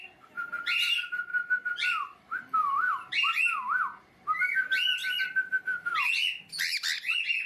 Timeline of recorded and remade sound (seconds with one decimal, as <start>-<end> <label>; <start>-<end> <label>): 0.0-1.3 recorded; 1.3-2.2 remade; 2.2-2.6 recorded; 2.6-3.4 remade; 3.4-7.5 recorded